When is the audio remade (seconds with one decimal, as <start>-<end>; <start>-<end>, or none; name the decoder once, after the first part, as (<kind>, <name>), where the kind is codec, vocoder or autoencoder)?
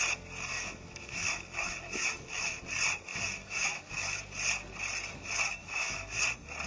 0.5-2.6 (autoencoder, DAC-VAE); 3.1-4.2; 5.6-6.2